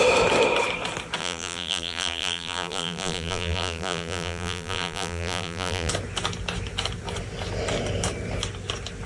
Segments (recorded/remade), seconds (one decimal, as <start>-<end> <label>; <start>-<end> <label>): 0.0-1.2 recorded; 1.2-5.9 remade; 5.9-9.1 recorded